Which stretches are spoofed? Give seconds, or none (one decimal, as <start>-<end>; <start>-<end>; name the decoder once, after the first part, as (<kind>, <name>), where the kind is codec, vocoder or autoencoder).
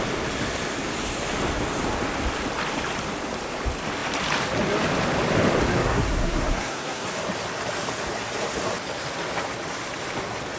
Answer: 5.8-7.1 (codec, SNAC)